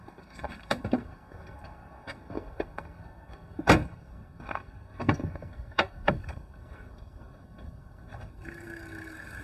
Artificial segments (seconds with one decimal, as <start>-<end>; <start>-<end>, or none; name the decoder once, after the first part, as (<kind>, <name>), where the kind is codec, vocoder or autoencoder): 0.0-9.4 (codec, SNAC)